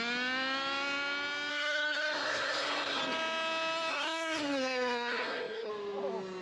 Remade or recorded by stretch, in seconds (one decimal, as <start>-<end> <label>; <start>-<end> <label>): 0.0-1.5 recorded; 1.5-3.0 remade; 3.0-3.9 recorded; 3.9-5.7 remade; 5.7-6.4 recorded